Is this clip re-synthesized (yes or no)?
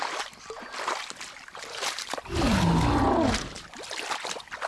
no